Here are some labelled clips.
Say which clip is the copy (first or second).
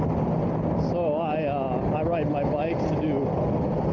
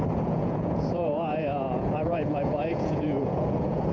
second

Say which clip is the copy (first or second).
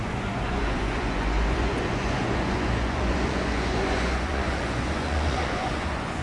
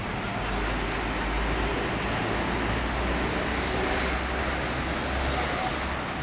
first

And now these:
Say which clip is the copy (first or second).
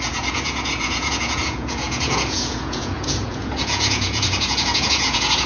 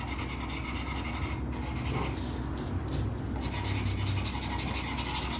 first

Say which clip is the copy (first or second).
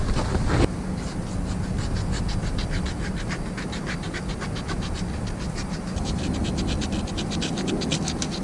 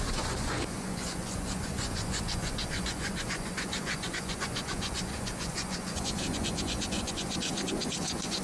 second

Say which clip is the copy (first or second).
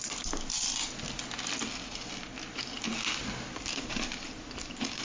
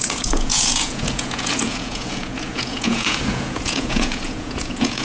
second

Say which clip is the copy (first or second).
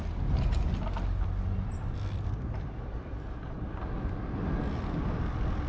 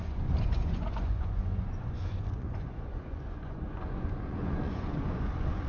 second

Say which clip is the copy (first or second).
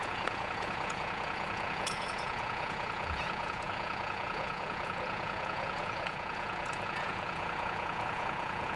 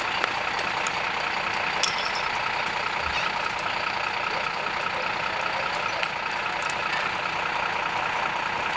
first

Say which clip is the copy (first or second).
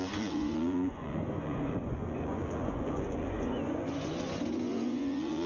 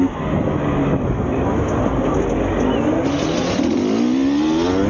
first